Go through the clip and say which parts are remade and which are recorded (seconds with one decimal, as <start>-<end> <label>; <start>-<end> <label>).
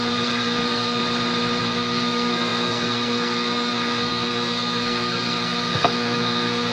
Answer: 0.0-1.0 remade; 1.0-1.6 recorded; 1.6-6.7 remade